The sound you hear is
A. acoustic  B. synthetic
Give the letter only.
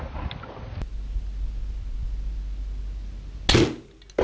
A